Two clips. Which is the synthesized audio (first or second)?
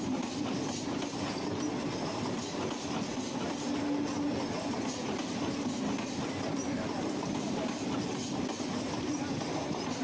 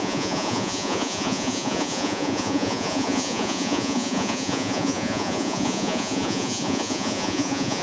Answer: second